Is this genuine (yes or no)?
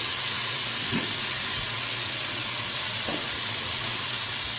no